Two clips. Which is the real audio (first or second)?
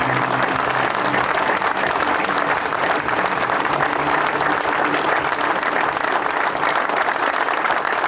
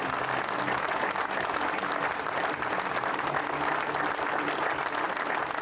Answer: second